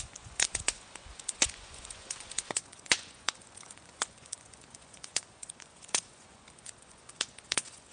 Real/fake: fake